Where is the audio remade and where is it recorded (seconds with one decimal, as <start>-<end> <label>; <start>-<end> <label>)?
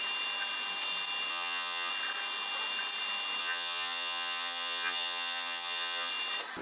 0.0-1.3 recorded; 1.3-1.9 remade; 1.9-3.4 recorded; 3.4-6.1 remade; 6.1-6.6 recorded